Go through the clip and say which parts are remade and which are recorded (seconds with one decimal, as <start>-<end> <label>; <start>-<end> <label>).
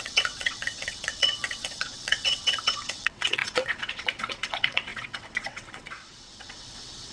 0.0-7.1 remade